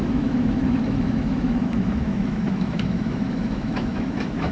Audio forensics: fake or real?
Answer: fake